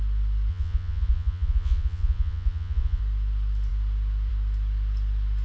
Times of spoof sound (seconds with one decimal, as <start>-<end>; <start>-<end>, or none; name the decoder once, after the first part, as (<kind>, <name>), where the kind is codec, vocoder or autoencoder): 0.5-3.0 (vocoder, Vocos)